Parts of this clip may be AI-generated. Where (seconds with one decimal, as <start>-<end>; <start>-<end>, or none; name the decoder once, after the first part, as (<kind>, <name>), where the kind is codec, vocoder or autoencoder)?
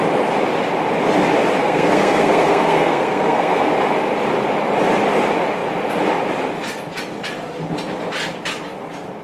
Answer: 1.6-3.7 (codec, SNAC)